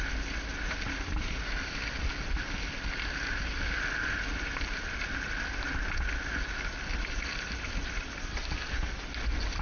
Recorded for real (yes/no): yes